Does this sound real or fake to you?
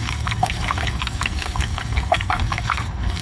fake